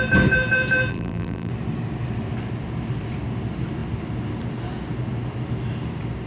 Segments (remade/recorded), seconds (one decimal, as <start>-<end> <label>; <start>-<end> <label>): 0.0-0.9 recorded; 0.9-1.5 remade; 1.5-6.3 recorded